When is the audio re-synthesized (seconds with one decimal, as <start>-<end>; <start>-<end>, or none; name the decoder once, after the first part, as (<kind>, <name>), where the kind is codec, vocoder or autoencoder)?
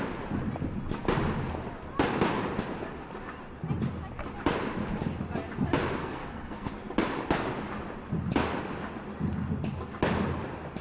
6.0-6.7 (codec, SNAC)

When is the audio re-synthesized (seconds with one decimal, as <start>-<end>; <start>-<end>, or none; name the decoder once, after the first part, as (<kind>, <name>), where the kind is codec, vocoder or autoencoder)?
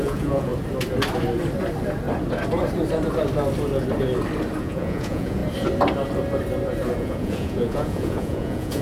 0.0-0.5 (vocoder, Vocos); 4.6-5.4; 7.0-8.8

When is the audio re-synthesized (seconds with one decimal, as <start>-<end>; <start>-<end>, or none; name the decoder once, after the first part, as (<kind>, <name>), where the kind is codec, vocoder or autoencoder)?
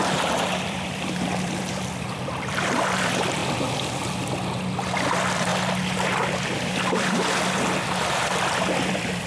0.0-3.4 (vocoder, BigVGAN v2); 5.1-5.5; 8.7-9.3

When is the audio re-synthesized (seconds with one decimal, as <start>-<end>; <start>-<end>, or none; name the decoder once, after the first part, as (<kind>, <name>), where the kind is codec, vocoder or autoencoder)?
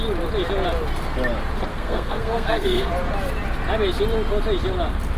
1.7-2.9 (codec, SNAC)